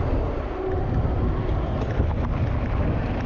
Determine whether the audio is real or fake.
real